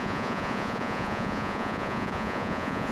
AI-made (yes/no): yes